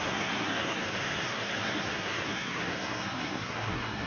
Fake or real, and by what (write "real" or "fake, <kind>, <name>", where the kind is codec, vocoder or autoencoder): fake, codec, SNAC